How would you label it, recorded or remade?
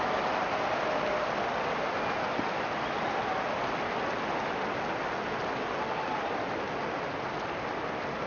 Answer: recorded